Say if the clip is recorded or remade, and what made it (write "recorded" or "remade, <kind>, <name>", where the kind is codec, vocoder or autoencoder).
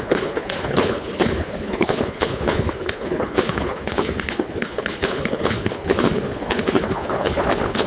remade, codec, HILCodec